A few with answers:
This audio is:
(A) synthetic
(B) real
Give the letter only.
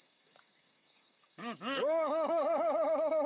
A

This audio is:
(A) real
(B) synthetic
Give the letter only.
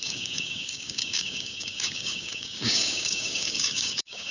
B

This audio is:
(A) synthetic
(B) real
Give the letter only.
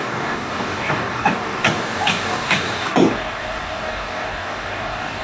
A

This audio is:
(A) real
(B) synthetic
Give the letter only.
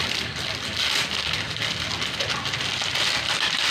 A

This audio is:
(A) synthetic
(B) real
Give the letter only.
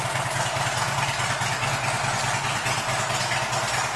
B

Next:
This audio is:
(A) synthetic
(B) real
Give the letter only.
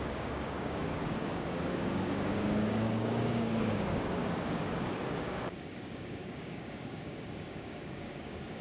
A